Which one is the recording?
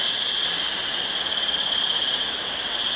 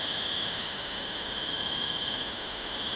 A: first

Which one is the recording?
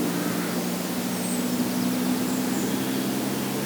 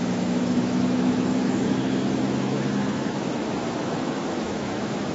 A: first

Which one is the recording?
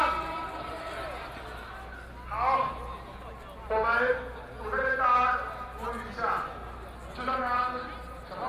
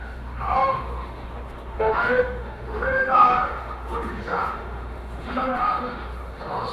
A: first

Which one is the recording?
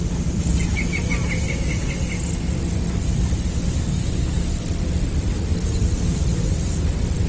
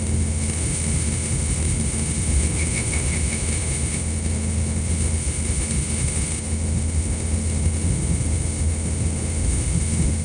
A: first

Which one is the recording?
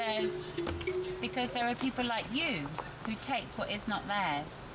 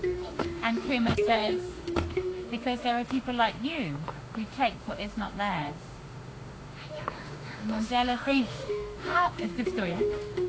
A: first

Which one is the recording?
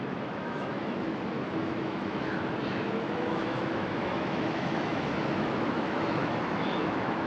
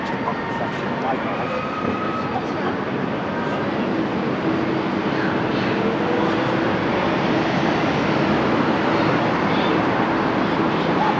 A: second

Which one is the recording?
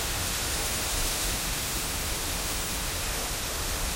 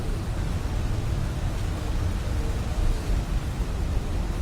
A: second